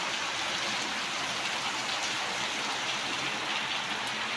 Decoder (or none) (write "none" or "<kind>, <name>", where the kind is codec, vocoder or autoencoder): none